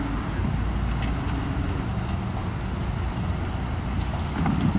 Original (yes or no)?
yes